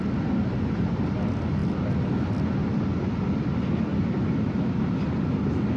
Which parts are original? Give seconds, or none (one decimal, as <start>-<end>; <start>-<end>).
0.0-5.8